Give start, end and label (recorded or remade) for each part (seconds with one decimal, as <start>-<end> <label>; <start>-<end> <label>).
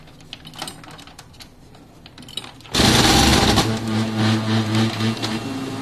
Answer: 0.0-5.8 recorded